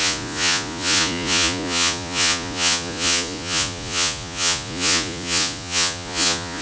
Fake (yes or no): yes